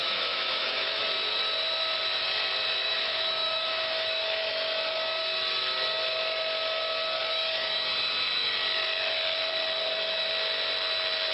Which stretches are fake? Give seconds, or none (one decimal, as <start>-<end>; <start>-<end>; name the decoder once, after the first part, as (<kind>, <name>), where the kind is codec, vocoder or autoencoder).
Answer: 0.0-1.0 (autoencoder, DAC-VAE); 2.8-4.5